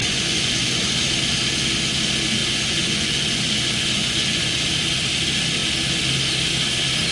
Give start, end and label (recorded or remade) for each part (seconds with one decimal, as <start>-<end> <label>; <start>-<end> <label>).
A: 0.0-1.1 remade; 1.1-2.4 recorded; 2.4-4.6 remade; 4.6-7.1 recorded